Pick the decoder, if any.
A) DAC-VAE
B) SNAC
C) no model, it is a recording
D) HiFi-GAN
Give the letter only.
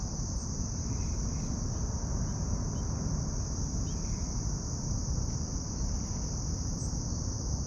C